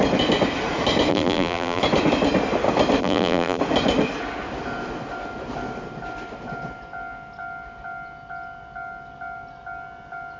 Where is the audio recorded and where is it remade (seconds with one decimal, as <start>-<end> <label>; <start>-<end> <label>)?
0.0-1.1 recorded; 1.1-1.8 remade; 1.8-3.0 recorded; 3.0-3.6 remade; 3.6-10.4 recorded